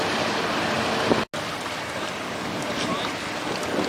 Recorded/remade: recorded